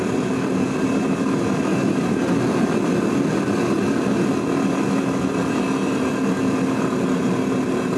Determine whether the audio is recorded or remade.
recorded